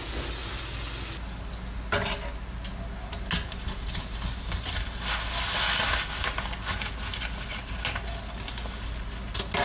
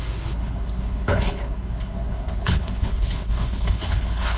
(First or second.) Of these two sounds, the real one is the first